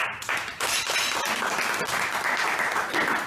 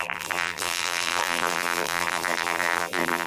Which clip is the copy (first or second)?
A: second